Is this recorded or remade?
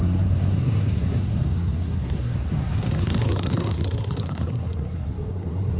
remade